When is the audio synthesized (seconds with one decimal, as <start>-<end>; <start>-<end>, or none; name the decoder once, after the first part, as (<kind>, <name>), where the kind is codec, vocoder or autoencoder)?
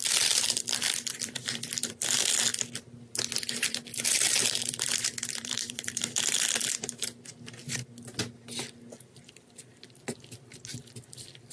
0.0-2.5 (vocoder, BigVGAN v2); 3.7-7.6; 9.2-11.5